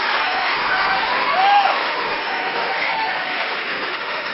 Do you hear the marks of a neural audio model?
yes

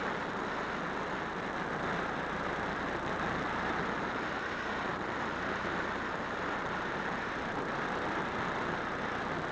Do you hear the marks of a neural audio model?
no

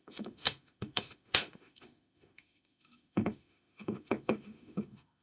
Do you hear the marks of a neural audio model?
yes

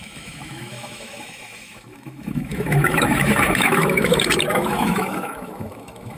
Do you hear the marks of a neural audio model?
yes